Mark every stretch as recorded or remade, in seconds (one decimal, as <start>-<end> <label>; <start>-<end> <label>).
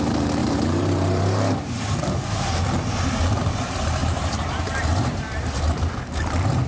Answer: 0.0-0.4 recorded; 0.4-1.9 remade; 1.9-4.0 recorded; 4.0-6.0 remade; 6.0-6.7 recorded